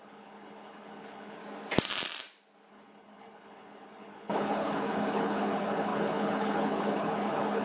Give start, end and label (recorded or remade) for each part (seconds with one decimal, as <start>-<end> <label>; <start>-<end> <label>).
0.0-1.4 remade; 1.4-2.7 recorded; 2.7-7.6 remade

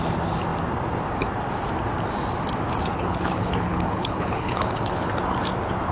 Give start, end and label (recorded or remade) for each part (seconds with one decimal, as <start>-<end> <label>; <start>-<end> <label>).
0.0-2.9 recorded; 2.9-5.1 remade; 5.1-5.9 recorded

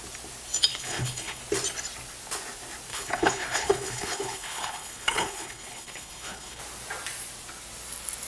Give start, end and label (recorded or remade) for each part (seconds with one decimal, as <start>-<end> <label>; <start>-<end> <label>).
0.0-0.7 recorded; 0.7-1.4 remade; 1.4-2.9 recorded; 2.9-6.6 remade; 6.6-8.3 recorded

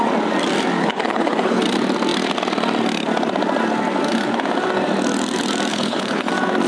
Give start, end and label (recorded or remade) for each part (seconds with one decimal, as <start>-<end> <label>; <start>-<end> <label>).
0.0-0.8 recorded; 0.8-1.6 remade; 1.6-5.7 recorded; 5.7-6.3 remade; 6.3-6.7 recorded

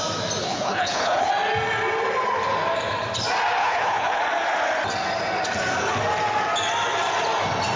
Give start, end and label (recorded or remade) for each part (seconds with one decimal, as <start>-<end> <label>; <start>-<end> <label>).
0.0-0.4 recorded; 0.4-1.3 remade; 1.3-3.6 recorded; 3.6-4.2 remade; 4.2-7.8 recorded

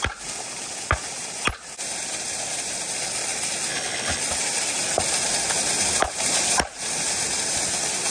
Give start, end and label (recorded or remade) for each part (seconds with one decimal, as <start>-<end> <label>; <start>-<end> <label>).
0.0-3.7 recorded; 3.7-4.2 remade; 4.2-8.1 recorded

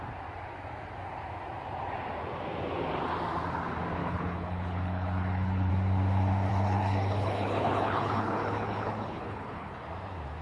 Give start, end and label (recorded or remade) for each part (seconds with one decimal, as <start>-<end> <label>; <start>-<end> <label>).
0.0-4.0 recorded; 4.0-5.7 remade; 5.7-6.5 recorded; 6.5-9.8 remade; 9.8-10.4 recorded

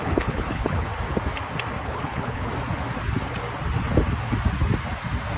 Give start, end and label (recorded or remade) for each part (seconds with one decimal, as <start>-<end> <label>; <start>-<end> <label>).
0.0-0.9 remade; 0.9-1.8 recorded; 1.8-2.5 remade; 2.5-5.4 recorded